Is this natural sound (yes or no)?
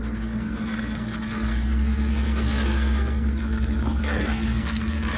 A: no